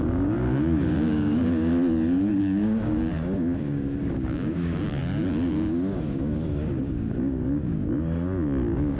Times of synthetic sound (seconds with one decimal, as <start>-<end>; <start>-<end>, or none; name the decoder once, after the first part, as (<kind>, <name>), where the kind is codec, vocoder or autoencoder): 0.0-1.7 (codec, DAC); 2.4-5.0; 5.5-9.0